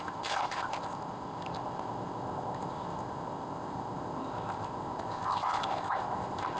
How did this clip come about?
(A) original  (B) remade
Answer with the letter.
B